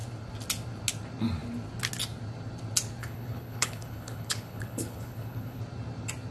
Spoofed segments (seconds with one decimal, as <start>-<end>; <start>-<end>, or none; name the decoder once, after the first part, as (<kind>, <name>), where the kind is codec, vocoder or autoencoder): 3.0-5.6 (codec, HILCodec)